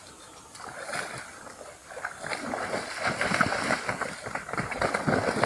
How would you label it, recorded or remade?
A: recorded